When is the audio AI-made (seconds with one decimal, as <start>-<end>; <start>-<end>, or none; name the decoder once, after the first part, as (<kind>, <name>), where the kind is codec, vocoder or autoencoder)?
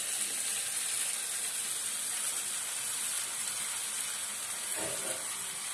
0.5-3.9 (vocoder, BigVGAN v2)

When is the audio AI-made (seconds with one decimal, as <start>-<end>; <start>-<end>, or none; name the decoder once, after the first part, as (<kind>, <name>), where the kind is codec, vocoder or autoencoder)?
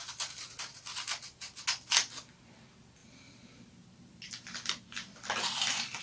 none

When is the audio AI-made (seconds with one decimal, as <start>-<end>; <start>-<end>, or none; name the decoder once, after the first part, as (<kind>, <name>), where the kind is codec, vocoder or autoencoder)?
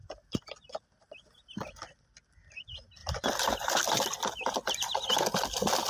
none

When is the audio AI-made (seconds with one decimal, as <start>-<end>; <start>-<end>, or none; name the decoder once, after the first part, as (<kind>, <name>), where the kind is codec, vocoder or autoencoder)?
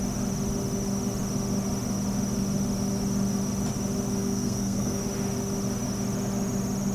4.2-5.0 (codec, SNAC)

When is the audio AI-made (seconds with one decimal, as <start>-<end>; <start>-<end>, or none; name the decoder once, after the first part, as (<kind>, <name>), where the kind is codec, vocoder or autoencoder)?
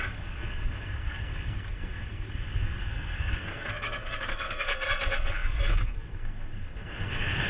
0.0-7.5 (codec, SNAC)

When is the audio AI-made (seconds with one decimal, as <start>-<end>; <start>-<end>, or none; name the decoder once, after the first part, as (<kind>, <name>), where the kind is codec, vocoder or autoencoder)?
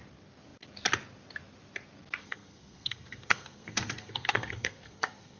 2.2-5.4 (codec, SNAC)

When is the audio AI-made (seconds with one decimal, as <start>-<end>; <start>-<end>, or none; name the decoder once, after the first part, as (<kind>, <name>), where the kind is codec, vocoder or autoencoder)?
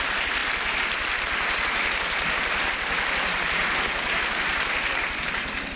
none